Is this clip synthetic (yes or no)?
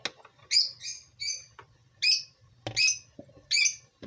no